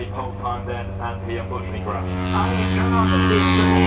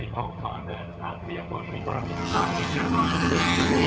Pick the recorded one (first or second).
first